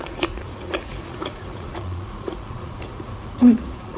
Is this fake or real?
fake